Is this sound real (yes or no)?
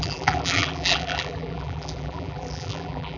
no